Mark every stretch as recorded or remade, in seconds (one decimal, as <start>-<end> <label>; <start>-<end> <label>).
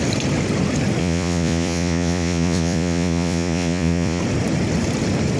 0.0-1.0 recorded; 1.0-4.2 remade; 4.2-5.4 recorded